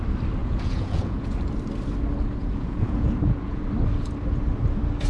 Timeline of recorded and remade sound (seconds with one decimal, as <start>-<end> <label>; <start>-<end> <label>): 0.0-0.4 recorded; 0.4-1.3 remade; 1.3-2.4 recorded; 2.4-3.6 remade; 3.6-5.1 recorded